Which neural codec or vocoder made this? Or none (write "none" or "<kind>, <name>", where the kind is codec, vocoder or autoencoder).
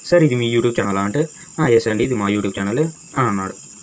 none